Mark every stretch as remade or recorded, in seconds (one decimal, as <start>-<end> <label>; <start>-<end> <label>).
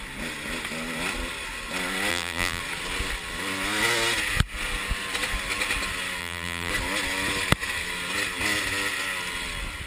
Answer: 0.0-2.1 recorded; 2.1-2.6 remade; 2.6-6.2 recorded; 6.2-6.7 remade; 6.7-9.9 recorded